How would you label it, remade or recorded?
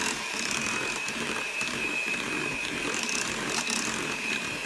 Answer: remade